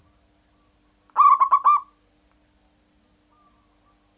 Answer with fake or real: real